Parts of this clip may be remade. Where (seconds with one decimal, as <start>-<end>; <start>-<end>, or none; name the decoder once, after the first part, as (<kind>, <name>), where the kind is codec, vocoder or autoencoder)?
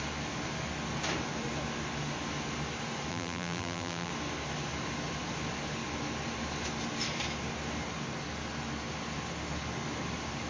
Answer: 3.1-4.1 (vocoder, BigVGAN v2)